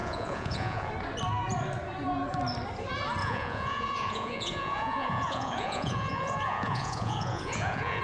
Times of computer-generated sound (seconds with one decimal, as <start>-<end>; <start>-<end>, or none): 0.0-0.9; 3.2-8.0